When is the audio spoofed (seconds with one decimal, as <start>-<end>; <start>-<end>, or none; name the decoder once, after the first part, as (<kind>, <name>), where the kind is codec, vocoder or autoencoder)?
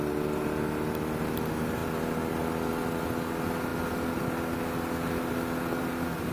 none